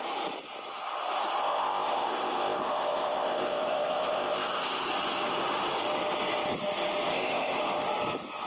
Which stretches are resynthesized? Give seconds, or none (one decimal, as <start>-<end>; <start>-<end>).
1.4-4.9; 7.1-7.6